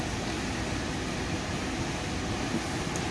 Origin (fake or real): real